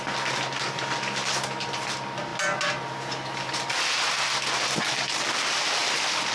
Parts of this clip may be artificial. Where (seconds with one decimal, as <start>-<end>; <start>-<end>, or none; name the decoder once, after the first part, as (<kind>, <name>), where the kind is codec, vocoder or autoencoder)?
none

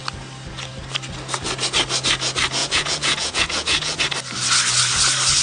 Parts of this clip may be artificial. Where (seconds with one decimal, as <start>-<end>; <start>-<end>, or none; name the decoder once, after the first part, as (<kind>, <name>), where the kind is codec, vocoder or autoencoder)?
2.6-4.0 (vocoder, Vocos)

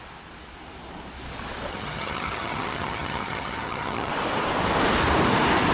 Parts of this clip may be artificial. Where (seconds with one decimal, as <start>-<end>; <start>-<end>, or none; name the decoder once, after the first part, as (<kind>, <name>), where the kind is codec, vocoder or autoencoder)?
1.7-4.1 (vocoder, HiFi-GAN)